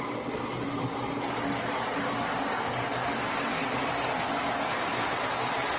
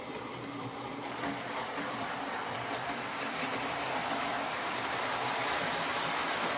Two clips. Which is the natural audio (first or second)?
first